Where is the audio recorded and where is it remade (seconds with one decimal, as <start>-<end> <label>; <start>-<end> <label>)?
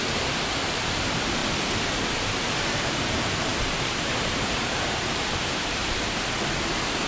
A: 0.0-1.4 remade; 1.4-2.9 recorded; 2.9-5.8 remade; 5.8-7.1 recorded